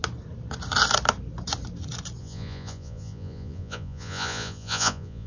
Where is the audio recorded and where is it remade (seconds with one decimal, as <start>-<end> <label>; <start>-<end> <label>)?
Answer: 0.0-2.2 recorded; 2.2-5.3 remade